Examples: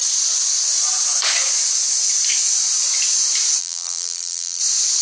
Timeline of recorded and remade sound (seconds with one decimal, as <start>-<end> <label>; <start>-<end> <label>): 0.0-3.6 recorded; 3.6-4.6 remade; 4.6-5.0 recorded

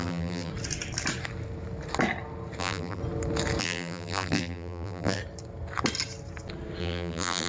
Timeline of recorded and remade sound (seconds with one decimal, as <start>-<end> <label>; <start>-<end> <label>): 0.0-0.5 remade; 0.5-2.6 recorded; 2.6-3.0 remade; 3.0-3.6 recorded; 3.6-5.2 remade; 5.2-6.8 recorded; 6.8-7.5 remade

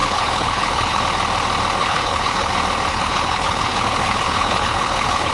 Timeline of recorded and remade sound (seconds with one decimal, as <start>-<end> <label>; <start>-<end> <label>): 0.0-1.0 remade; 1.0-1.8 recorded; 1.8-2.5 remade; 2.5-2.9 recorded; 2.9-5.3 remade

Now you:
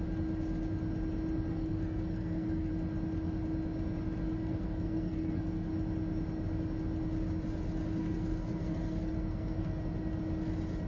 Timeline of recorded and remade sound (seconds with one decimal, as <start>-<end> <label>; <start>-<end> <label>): 0.0-1.5 recorded; 1.5-2.7 remade; 2.7-4.4 recorded; 4.4-5.7 remade; 5.7-8.0 recorded; 8.0-9.8 remade; 9.8-10.9 recorded

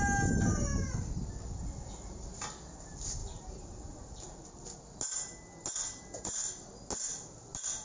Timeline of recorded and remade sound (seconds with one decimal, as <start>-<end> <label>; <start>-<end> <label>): 0.0-7.8 recorded

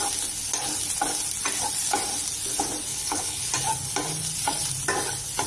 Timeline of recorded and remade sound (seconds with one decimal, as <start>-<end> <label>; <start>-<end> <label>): 0.0-2.9 recorded; 2.9-3.5 remade; 3.5-5.5 recorded